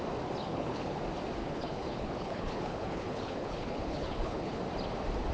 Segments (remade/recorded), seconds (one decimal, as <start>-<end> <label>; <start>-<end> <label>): 0.0-0.4 recorded; 0.4-1.0 remade; 1.0-1.4 recorded; 1.4-4.6 remade; 4.6-5.3 recorded